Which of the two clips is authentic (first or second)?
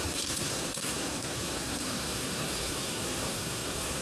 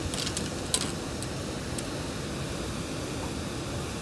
second